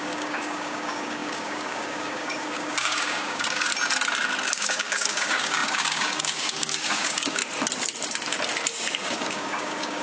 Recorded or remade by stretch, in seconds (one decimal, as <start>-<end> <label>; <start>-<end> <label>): 0.0-3.7 remade; 3.7-4.5 recorded; 4.5-7.4 remade; 7.4-8.9 recorded; 8.9-10.0 remade